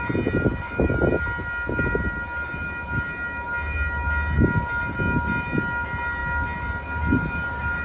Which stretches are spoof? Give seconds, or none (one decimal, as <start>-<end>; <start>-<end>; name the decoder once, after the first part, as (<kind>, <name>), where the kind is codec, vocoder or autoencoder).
none